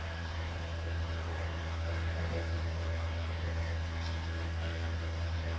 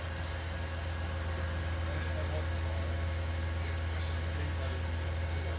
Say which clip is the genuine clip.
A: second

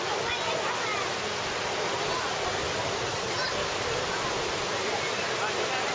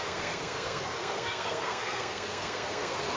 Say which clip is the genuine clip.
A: first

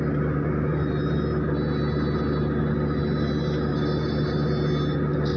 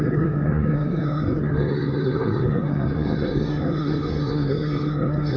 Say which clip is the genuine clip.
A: first